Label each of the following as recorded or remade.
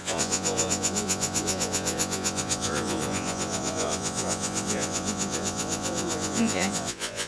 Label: remade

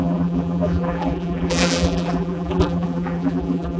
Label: remade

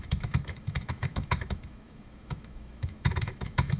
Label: remade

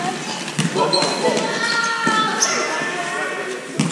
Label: recorded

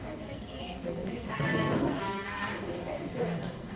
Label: remade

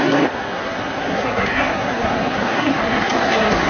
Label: remade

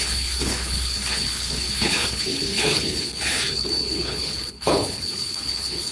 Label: remade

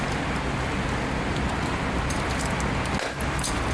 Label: recorded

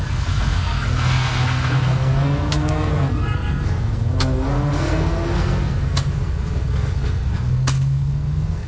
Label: remade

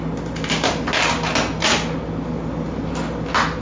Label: recorded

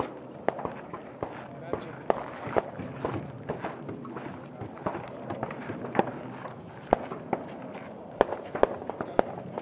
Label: recorded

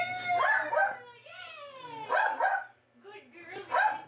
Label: recorded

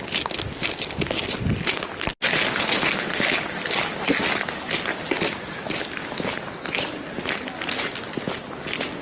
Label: recorded